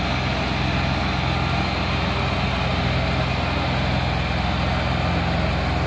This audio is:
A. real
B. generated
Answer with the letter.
A